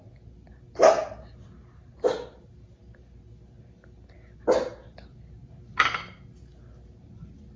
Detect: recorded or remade recorded